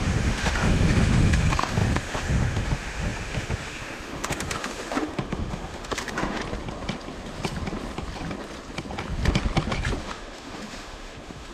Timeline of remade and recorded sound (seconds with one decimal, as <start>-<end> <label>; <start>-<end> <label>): 0.0-6.4 remade; 6.4-10.0 recorded; 10.0-11.5 remade